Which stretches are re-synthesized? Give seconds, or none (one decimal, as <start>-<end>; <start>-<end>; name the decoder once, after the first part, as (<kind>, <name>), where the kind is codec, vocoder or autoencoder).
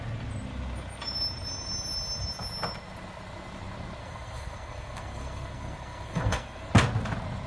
4.0-6.7 (codec, SNAC)